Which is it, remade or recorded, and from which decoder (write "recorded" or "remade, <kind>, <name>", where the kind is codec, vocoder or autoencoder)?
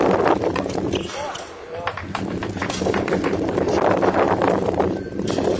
remade, vocoder, BigVGAN v2